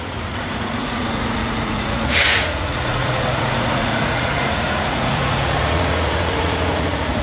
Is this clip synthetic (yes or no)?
yes